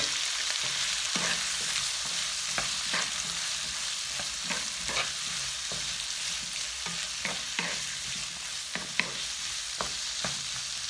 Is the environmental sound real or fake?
real